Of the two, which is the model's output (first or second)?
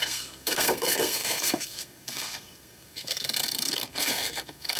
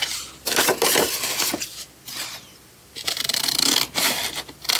first